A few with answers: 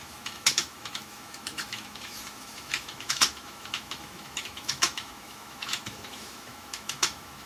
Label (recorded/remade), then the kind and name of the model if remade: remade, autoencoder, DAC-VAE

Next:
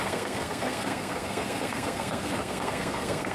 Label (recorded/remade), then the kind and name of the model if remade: remade, codec, SNAC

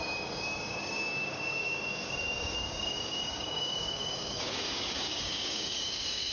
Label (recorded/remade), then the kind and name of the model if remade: remade, codec, DAC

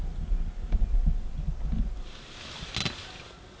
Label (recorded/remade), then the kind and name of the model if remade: recorded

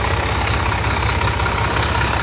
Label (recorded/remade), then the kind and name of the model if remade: remade, codec, DAC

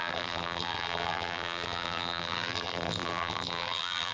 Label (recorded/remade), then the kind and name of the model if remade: remade, vocoder, BigVGAN v2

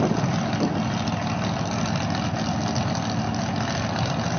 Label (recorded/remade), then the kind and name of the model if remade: recorded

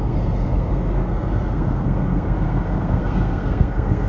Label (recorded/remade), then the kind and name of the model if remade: remade, codec, SNAC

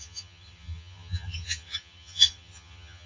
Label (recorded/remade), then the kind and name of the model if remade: remade, vocoder, HiFi-GAN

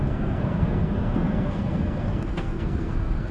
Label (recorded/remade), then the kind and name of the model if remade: remade, codec, SNAC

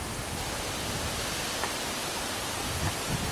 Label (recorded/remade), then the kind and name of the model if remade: recorded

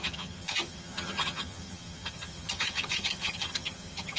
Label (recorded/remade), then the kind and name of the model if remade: remade, vocoder, HiFi-GAN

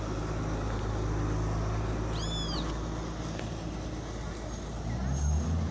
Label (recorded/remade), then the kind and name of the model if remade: recorded